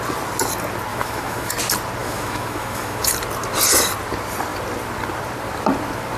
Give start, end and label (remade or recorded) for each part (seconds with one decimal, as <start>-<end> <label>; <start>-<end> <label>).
0.0-0.9 recorded; 0.9-1.5 remade; 1.5-2.0 recorded; 2.0-3.1 remade; 3.1-6.2 recorded